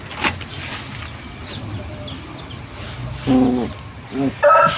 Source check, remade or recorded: recorded